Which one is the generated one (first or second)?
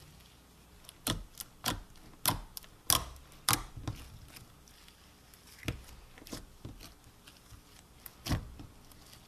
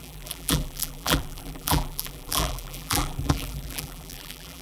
second